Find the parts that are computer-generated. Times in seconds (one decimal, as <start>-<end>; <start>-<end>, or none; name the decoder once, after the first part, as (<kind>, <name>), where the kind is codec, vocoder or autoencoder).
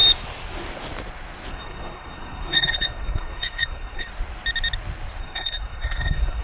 1.5-4.1 (codec, SNAC); 5.2-6.4